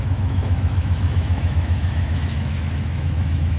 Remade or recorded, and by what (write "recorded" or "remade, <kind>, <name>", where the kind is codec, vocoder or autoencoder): remade, autoencoder, DAC-VAE